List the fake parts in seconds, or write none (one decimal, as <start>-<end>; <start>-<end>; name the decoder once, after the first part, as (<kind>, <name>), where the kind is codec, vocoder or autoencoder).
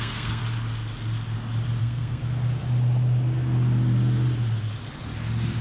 0.0-0.4 (codec, SNAC); 1.8-2.2